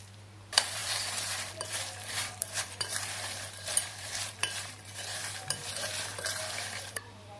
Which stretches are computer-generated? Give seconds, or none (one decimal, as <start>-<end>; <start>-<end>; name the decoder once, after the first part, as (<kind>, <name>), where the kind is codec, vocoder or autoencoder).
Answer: 0.0-7.4 (vocoder, BigVGAN v2)